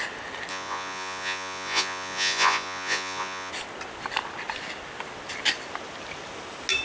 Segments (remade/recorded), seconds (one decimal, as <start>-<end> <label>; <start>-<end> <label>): 0.0-0.5 recorded; 0.5-3.5 remade; 3.5-6.8 recorded